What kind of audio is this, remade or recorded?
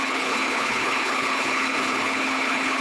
remade